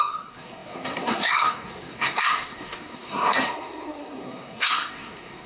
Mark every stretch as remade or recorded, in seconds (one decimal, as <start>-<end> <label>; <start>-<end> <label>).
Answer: 0.0-5.5 remade